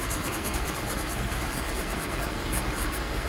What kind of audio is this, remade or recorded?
remade